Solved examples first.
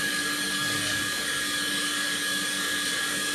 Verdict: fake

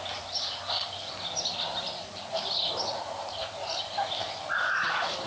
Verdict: real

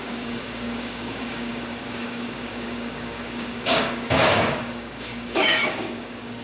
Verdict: fake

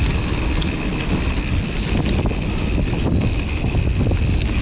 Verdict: real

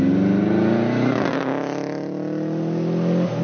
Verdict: real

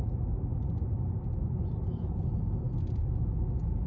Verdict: real